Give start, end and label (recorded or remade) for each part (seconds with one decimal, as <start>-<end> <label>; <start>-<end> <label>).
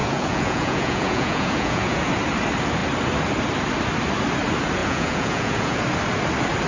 0.0-2.1 remade; 2.1-4.8 recorded; 4.8-5.8 remade; 5.8-6.7 recorded